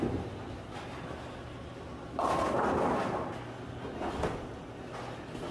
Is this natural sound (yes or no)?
yes